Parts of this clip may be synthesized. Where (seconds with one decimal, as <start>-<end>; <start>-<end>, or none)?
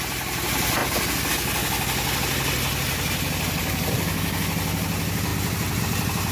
3.6-4.4